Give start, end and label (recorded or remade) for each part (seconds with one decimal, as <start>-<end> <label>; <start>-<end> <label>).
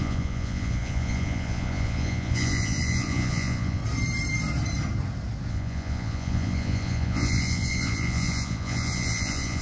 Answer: 0.0-3.8 remade; 3.8-5.5 recorded; 5.5-9.6 remade